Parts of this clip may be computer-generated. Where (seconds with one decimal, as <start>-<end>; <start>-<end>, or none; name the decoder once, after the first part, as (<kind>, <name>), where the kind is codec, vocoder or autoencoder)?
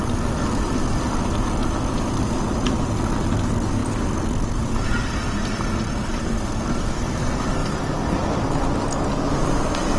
none